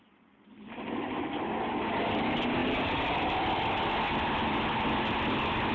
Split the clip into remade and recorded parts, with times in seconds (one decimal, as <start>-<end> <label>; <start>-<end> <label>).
0.0-5.7 recorded

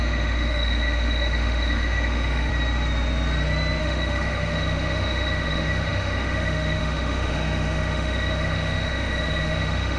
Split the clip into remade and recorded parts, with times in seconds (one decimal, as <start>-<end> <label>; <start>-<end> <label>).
0.0-2.5 remade; 2.5-3.8 recorded; 3.8-10.0 remade